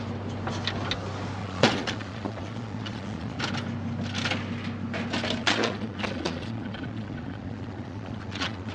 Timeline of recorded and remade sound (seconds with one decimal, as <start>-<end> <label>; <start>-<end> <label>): 0.0-1.4 recorded; 1.4-3.4 remade; 3.4-5.4 recorded; 5.4-8.7 remade